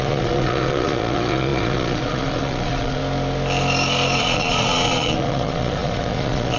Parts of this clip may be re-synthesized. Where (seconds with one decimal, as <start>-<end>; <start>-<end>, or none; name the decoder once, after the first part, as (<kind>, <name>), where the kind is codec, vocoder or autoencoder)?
0.0-3.0 (vocoder, Vocos); 4.2-6.6